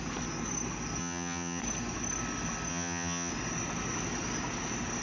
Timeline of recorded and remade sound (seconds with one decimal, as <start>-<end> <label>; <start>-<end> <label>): 0.0-1.0 recorded; 1.0-1.6 remade; 1.6-2.7 recorded; 2.7-3.3 remade; 3.3-5.0 recorded